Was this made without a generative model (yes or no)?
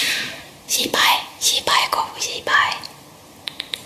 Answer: no